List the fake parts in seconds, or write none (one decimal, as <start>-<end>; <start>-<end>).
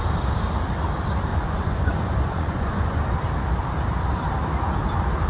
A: 1.3-3.0